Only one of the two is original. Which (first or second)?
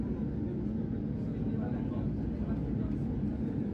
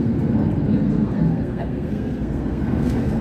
first